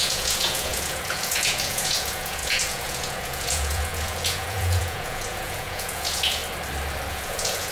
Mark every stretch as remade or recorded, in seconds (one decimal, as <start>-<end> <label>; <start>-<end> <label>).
0.0-6.4 remade; 6.4-7.1 recorded; 7.1-7.7 remade